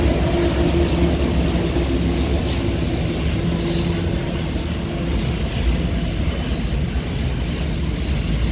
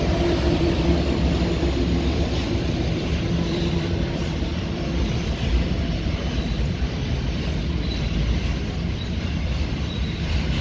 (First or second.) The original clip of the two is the first